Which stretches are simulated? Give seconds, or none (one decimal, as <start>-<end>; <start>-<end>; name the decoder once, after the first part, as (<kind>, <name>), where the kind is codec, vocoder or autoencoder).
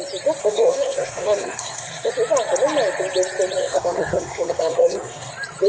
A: 0.4-2.1 (codec, SNAC); 3.6-5.3